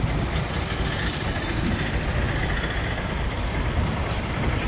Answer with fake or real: real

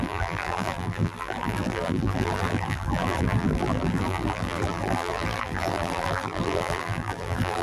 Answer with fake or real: fake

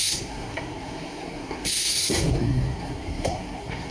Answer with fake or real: fake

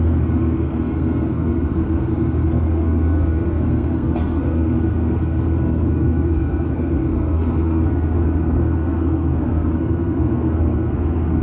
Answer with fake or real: fake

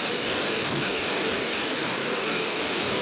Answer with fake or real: fake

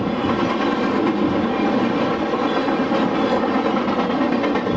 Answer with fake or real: real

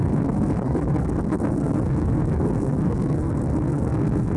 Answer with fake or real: fake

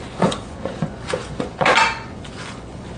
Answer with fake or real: fake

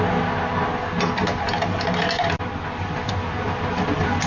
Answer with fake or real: real